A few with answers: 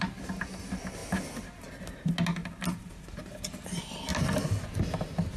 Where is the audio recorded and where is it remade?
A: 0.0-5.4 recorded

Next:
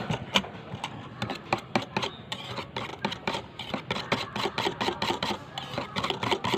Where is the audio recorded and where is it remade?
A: 0.0-6.6 recorded

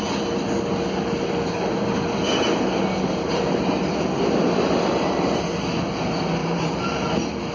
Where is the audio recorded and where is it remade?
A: 0.0-6.4 recorded; 6.4-7.1 remade; 7.1-7.5 recorded

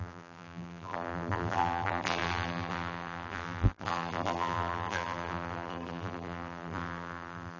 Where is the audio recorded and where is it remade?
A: 0.0-7.6 remade